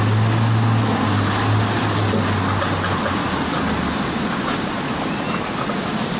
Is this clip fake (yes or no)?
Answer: no